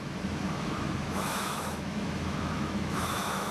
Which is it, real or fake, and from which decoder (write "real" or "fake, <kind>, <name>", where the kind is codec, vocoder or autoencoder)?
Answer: fake, autoencoder, DAC-VAE